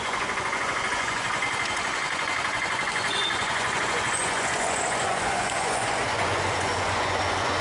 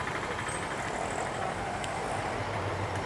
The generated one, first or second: first